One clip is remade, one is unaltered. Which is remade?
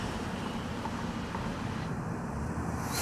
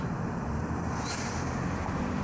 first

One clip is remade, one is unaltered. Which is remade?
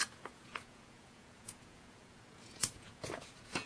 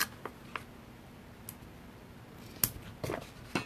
first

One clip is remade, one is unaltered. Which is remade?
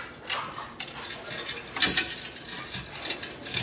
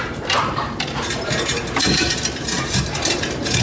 second